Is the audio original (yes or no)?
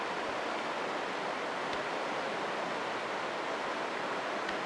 yes